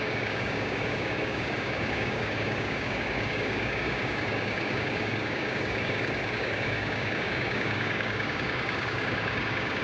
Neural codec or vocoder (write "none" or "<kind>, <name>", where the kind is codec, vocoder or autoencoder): codec, DAC